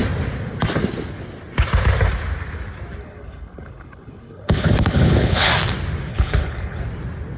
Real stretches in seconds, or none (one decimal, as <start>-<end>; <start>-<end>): 0.0-3.0; 5.5-6.1; 6.8-7.4